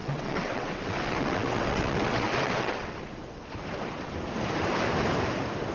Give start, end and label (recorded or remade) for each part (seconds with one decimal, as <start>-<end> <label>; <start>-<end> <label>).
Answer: 0.0-3.0 remade; 3.0-5.7 recorded